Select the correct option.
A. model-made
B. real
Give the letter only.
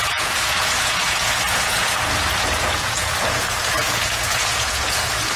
A